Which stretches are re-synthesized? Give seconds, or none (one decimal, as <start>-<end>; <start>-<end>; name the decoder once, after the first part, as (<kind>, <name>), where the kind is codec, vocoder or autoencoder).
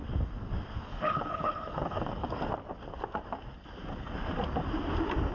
0.9-2.4 (codec, HILCodec)